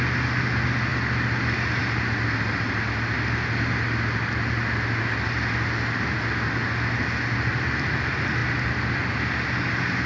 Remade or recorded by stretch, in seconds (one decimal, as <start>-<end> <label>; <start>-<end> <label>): 0.0-10.1 recorded